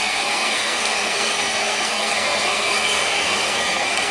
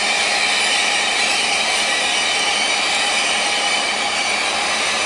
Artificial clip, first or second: first